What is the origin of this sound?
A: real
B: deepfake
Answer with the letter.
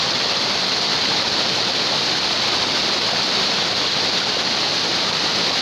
A